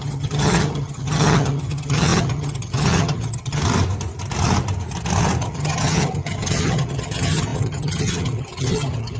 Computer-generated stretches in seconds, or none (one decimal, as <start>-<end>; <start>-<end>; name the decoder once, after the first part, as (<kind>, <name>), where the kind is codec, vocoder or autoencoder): 0.0-3.6 (vocoder, HiFi-GAN); 5.4-9.2